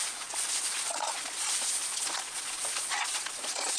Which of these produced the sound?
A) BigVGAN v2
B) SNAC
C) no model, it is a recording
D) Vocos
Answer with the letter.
D